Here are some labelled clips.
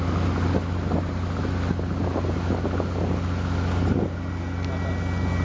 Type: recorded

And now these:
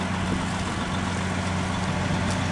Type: recorded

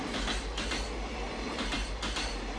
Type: recorded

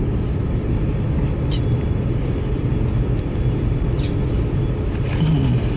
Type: recorded